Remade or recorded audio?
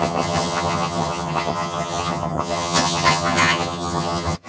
remade